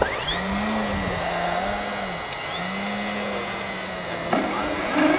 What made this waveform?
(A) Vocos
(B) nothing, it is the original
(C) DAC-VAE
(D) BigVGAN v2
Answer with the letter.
B